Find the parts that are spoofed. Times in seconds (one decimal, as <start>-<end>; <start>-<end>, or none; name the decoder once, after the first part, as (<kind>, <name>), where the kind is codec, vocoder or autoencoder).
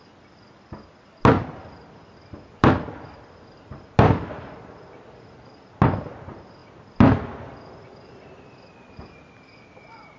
none